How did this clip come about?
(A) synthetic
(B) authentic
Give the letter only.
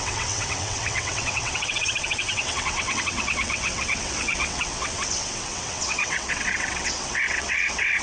A